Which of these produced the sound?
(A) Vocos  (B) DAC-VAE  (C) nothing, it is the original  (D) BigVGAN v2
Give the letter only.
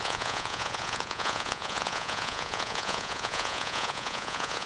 A